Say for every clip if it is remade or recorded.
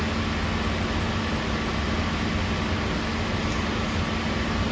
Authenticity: recorded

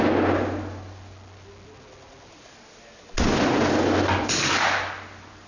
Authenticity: recorded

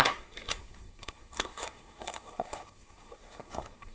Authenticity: remade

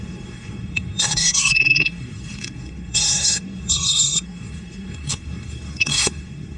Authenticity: remade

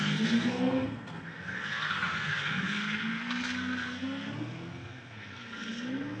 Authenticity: remade